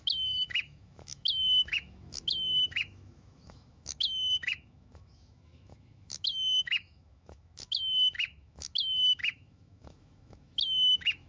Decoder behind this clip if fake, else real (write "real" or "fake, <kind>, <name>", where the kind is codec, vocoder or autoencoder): fake, autoencoder, DAC-VAE